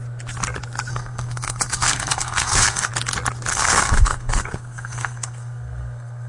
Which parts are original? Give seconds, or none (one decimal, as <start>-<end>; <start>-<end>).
0.0-0.9; 2.9-3.5